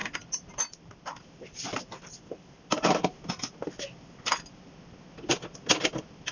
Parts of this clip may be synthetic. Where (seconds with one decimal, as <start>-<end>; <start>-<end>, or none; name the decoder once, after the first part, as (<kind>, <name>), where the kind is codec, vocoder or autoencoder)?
none